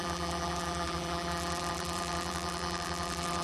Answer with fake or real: fake